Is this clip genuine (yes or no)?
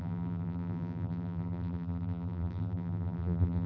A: no